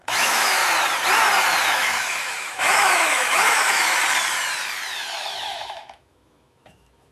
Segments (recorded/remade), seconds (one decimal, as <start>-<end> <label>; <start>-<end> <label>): 0.0-0.6 remade; 0.6-1.7 recorded; 1.7-4.0 remade; 4.0-5.2 recorded; 5.2-7.1 remade